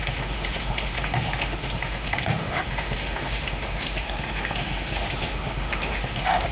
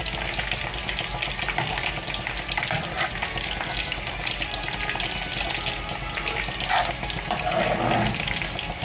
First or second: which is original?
second